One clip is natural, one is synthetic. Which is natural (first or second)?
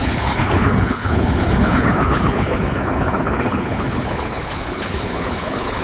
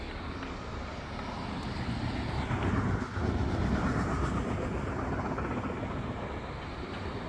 second